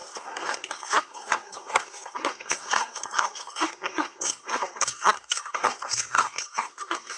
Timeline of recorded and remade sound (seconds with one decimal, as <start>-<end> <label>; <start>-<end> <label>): 0.0-7.2 remade